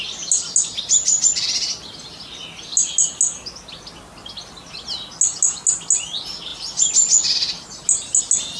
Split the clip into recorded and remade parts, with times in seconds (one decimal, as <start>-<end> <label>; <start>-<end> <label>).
0.0-8.6 recorded